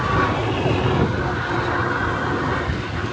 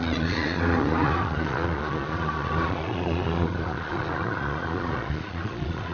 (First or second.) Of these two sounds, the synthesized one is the second